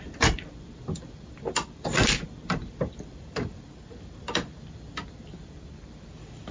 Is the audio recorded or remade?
remade